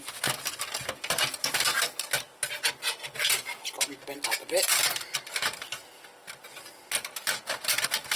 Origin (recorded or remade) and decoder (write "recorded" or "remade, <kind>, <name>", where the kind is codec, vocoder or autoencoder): recorded